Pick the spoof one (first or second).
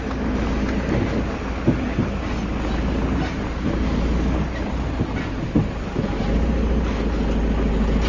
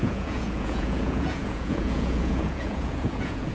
second